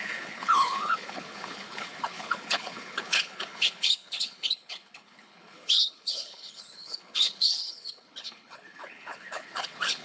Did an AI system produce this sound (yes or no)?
yes